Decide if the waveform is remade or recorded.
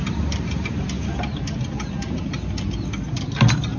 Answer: recorded